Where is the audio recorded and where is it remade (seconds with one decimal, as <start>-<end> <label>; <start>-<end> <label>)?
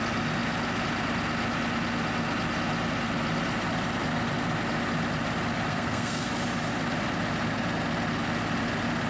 0.0-5.7 recorded; 5.7-6.3 remade; 6.3-9.1 recorded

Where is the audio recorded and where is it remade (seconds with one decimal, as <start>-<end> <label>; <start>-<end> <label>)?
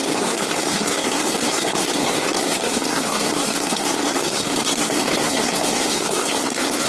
0.0-6.9 remade